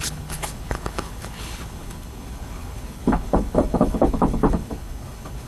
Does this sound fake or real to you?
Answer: fake